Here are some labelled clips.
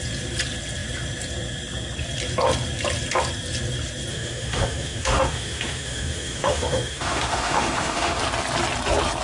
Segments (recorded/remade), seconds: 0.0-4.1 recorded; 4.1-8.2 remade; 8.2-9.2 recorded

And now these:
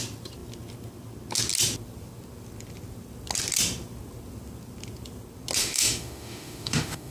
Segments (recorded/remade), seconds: 0.0-5.6 recorded; 5.6-7.1 remade

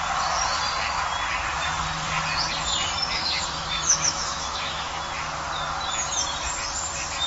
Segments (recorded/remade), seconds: 0.0-3.2 recorded; 3.2-5.1 remade; 5.1-7.3 recorded

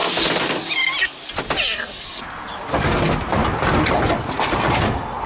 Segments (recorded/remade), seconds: 0.0-5.3 recorded

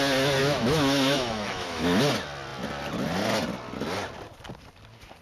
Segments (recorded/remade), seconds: 0.0-0.4 recorded; 0.4-2.0 remade; 2.0-5.2 recorded

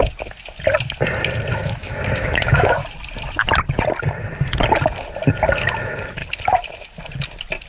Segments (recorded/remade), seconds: 0.0-1.5 recorded; 1.5-2.8 remade; 2.8-5.8 recorded; 5.8-6.2 remade; 6.2-7.7 recorded

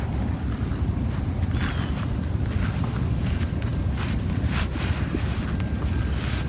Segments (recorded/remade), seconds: 0.0-6.5 recorded

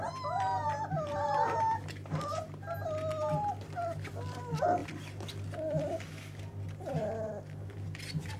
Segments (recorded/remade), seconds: 0.0-8.4 recorded